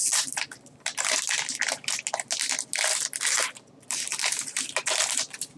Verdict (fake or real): real